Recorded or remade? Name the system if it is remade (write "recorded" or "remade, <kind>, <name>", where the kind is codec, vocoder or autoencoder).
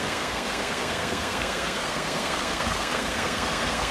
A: remade, codec, SNAC